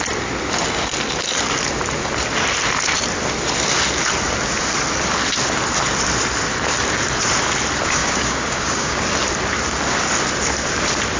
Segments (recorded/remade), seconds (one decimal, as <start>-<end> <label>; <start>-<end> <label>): 0.0-8.0 recorded; 8.0-9.0 remade; 9.0-11.2 recorded